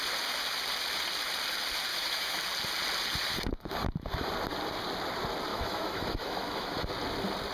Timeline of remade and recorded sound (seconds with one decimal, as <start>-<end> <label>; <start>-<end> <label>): 0.0-1.9 recorded; 1.9-2.4 remade; 2.4-3.3 recorded; 3.3-4.3 remade; 4.3-5.5 recorded; 5.5-6.9 remade; 6.9-7.5 recorded